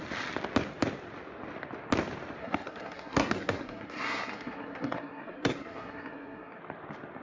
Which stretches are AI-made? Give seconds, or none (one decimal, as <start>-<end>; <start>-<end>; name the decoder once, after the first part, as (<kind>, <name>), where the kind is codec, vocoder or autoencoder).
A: 2.4-6.6 (codec, SNAC)